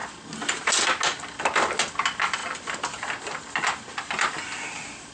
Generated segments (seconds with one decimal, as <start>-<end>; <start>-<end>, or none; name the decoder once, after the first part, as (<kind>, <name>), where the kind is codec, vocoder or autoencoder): none